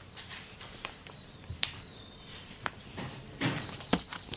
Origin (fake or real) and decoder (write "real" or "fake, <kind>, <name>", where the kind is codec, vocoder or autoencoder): fake, vocoder, BigVGAN v2